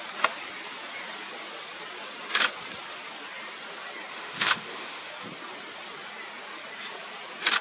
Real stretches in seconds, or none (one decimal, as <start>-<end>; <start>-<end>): 0.0-4.1; 5.1-7.6